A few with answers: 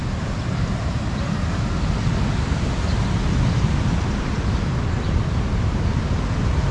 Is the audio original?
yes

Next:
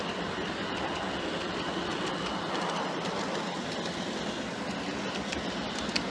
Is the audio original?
yes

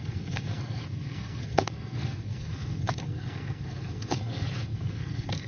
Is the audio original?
no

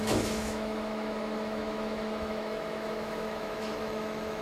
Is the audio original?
no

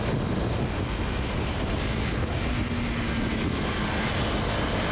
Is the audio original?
yes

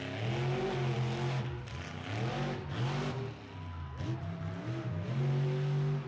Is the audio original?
yes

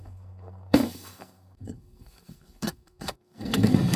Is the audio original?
no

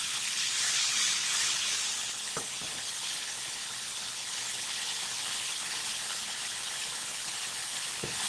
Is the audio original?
no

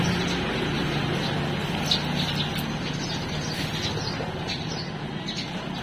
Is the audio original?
yes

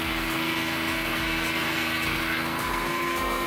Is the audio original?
no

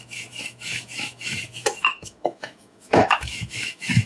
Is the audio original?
no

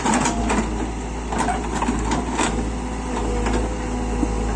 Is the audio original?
yes